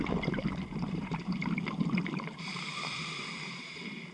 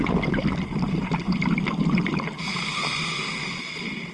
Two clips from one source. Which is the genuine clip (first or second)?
second